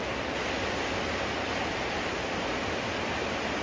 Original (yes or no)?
yes